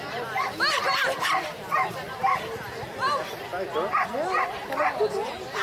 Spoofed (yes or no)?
no